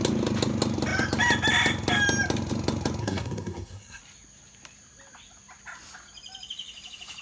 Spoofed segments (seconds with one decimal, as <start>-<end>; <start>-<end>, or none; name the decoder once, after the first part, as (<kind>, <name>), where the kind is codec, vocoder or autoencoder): 3.0-4.0 (codec, SNAC)